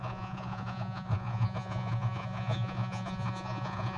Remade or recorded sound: remade